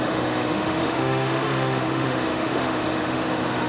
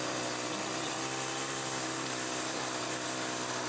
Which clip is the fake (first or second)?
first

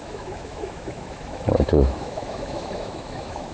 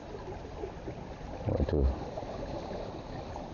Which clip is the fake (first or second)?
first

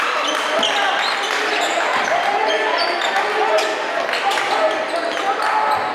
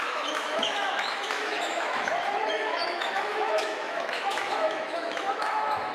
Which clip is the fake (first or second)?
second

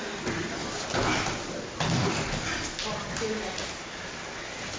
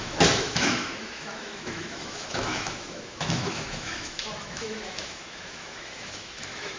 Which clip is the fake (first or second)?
second